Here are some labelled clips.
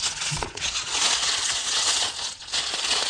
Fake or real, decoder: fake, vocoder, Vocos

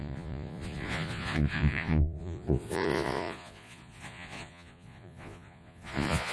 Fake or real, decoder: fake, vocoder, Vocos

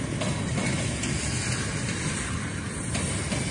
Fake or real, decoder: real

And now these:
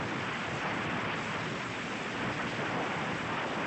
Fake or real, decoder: real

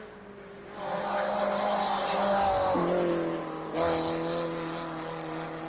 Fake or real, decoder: real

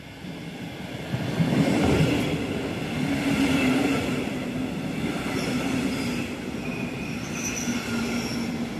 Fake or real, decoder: real